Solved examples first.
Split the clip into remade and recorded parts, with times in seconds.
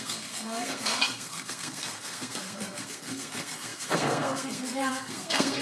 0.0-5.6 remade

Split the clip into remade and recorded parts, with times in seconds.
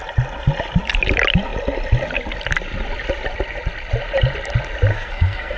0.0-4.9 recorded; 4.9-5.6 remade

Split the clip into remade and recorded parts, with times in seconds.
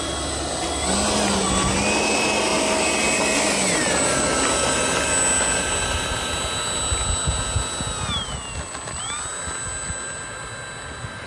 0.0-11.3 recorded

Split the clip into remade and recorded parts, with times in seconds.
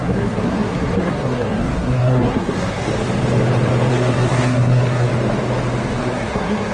0.0-2.9 remade; 2.9-3.9 recorded; 3.9-5.1 remade; 5.1-6.0 recorded; 6.0-6.7 remade